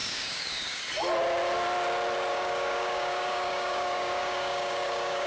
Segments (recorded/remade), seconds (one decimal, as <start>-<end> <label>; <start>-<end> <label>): 0.0-0.8 remade; 0.8-2.3 recorded; 2.3-5.3 remade